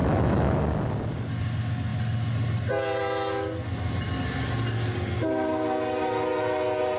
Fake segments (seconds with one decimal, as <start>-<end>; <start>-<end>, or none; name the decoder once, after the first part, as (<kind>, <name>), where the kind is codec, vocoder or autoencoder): 0.0-0.6 (autoencoder, DAC-VAE)